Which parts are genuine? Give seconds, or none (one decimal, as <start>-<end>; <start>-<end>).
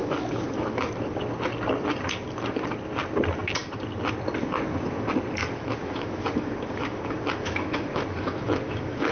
0.9-5.4